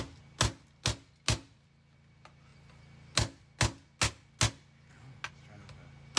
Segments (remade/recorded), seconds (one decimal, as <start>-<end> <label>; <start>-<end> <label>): 0.0-6.2 recorded